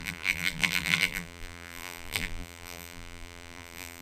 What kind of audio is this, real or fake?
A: fake